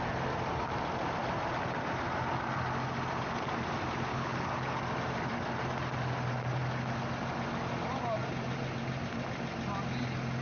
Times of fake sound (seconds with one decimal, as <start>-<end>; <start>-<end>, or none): 4.1-4.8